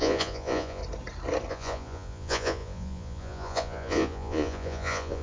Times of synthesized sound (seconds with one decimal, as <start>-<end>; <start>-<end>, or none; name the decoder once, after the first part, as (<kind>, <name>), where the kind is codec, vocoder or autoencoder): 0.0-0.8 (vocoder, Vocos); 1.5-5.2